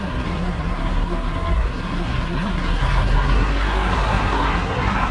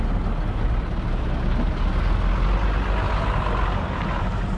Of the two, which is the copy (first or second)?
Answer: first